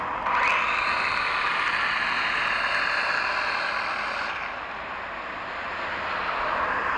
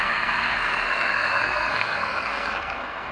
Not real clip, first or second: second